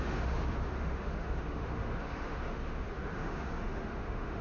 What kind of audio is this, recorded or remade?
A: remade